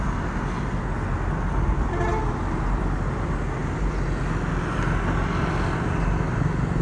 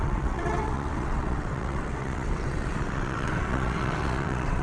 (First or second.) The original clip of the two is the first